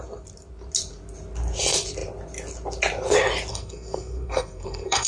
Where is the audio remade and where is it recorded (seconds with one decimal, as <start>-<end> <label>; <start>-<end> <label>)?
0.0-3.5 recorded; 3.5-5.1 remade